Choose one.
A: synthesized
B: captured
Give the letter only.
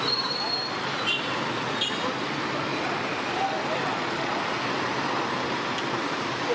B